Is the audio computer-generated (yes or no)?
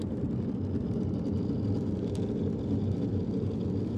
no